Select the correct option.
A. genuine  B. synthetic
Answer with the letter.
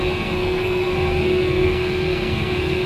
B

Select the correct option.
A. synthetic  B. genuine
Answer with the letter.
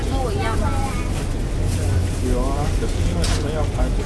B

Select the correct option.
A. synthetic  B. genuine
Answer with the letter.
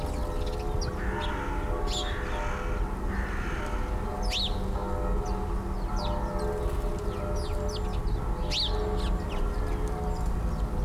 B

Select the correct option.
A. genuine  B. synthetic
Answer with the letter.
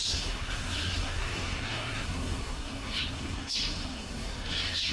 B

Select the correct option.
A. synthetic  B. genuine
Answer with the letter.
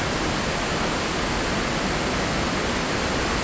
B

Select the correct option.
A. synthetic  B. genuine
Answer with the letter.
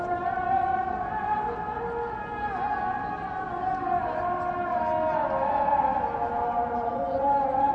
B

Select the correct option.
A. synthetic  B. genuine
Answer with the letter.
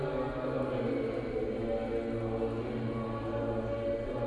B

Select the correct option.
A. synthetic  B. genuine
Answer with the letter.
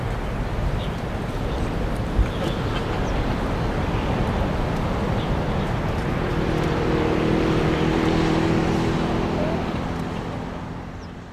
B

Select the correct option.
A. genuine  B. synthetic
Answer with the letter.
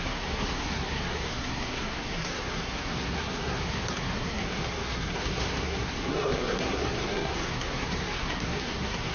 B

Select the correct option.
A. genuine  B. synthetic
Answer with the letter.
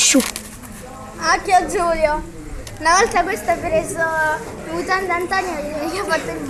A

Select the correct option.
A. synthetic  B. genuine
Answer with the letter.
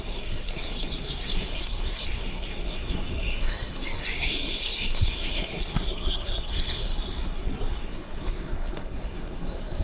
A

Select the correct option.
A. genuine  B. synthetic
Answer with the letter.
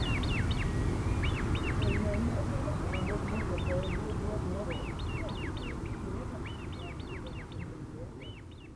A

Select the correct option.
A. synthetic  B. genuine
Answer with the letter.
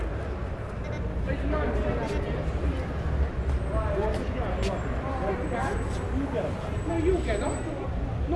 B